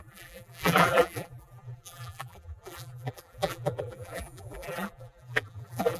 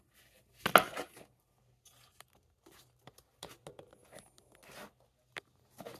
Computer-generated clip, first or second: first